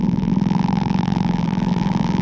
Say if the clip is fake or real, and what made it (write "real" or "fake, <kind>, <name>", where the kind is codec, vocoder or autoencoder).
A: fake, vocoder, BigVGAN v2